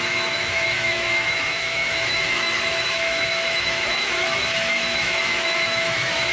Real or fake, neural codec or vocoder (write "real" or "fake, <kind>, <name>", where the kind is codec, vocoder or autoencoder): fake, autoencoder, DAC-VAE